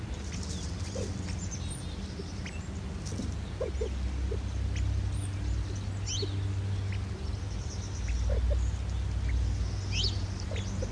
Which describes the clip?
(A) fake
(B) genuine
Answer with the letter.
B